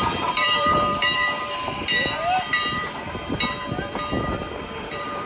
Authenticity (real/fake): fake